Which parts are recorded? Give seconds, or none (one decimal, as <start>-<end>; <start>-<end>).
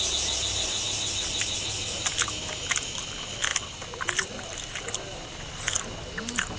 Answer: 0.0-6.6